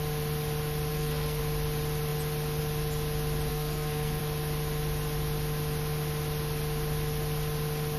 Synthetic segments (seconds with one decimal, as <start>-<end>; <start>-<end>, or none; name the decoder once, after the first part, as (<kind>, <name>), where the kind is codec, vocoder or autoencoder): 0.9-1.4 (codec, SNAC); 3.5-4.2